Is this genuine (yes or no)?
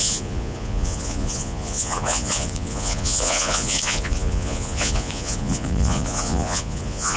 no